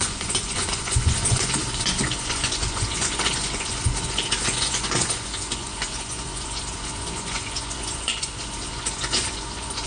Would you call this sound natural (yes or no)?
no